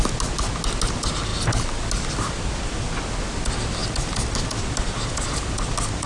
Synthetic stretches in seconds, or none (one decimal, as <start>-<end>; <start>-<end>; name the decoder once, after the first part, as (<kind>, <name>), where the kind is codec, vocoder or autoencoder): none